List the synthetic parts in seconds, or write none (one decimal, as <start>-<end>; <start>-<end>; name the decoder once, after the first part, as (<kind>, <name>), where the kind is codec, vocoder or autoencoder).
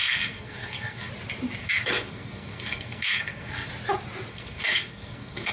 0.0-1.1 (codec, SNAC); 1.6-3.7; 4.3-5.5